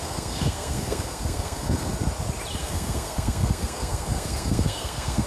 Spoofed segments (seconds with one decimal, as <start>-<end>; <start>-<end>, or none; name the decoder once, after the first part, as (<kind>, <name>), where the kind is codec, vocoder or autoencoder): 0.0-1.9 (codec, SNAC); 2.6-5.3